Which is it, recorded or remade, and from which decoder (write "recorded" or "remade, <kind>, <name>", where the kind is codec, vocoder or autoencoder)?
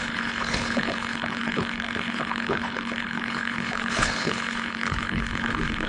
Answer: remade, codec, HILCodec